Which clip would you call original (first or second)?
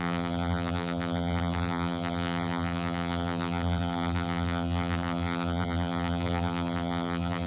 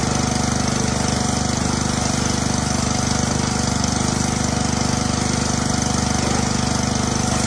second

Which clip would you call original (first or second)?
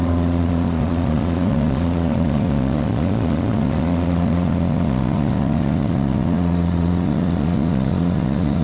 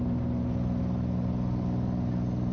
second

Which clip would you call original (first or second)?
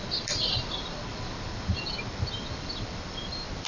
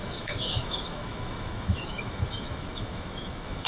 first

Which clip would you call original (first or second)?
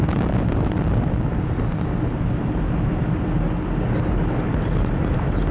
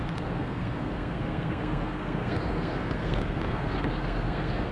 first